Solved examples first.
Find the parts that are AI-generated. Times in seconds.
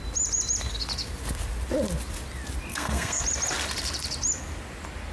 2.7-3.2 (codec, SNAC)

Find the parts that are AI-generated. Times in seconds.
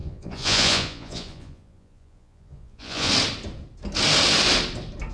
0.0-3.1 (vocoder, Vocos)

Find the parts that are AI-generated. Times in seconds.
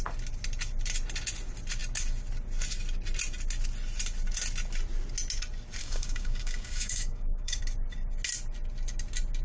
5.8-7.6 (codec, DAC)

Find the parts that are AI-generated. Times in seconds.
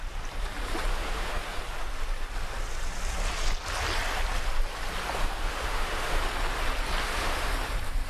0.9-1.6 (autoencoder, DAC-VAE); 5.2-6.2; 7.0-7.5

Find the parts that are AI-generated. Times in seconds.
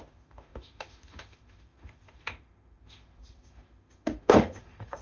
0.0-5.0 (autoencoder, DAC-VAE)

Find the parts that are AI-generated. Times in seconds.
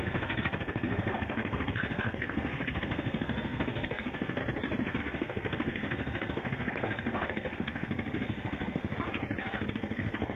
0.0-4.4 (codec, SNAC); 5.0-8.8; 9.7-10.4